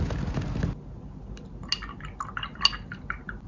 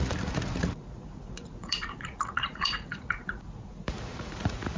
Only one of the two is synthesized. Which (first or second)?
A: second